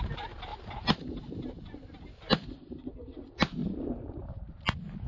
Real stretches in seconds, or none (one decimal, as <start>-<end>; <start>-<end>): 0.0-5.1